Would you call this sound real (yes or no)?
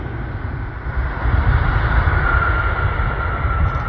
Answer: yes